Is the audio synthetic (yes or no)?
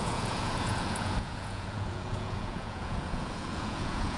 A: yes